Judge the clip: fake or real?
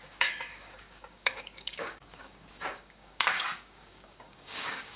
fake